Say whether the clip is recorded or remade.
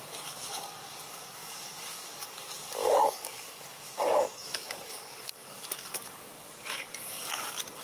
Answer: remade